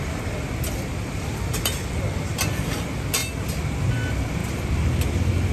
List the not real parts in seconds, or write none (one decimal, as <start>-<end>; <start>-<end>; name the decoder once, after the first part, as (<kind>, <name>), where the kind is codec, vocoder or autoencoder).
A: 0.0-3.2 (vocoder, BigVGAN v2); 3.8-4.4